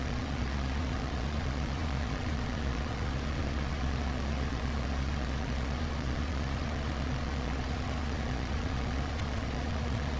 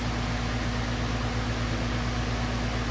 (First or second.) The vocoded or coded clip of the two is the first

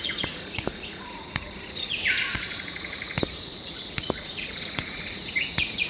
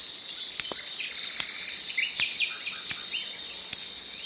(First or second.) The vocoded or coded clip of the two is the first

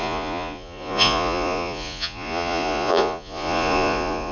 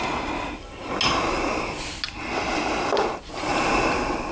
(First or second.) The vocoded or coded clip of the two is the first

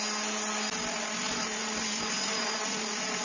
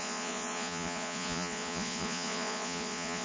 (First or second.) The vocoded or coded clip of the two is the second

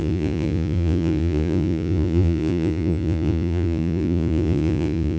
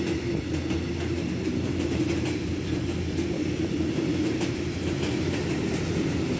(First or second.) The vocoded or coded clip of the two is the first